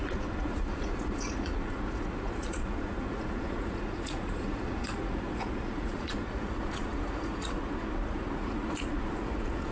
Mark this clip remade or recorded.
remade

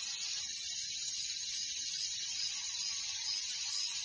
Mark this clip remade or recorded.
recorded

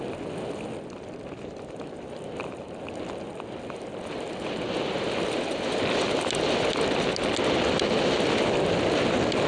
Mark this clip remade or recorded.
recorded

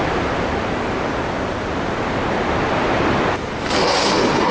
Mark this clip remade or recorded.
recorded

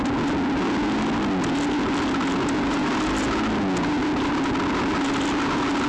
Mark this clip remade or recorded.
recorded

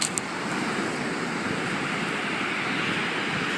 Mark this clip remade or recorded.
recorded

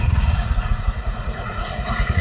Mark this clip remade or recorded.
remade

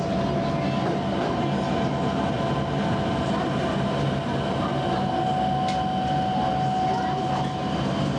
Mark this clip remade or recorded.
recorded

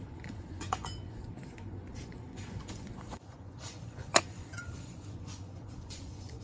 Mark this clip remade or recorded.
remade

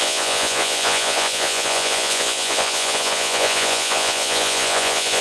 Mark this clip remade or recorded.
remade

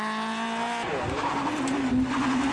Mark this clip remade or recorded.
recorded